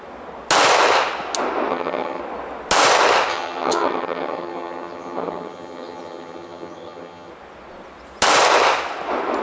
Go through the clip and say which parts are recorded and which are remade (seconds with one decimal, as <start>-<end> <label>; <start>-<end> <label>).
0.0-1.7 recorded; 1.7-2.2 remade; 2.2-3.3 recorded; 3.3-7.3 remade; 7.3-9.4 recorded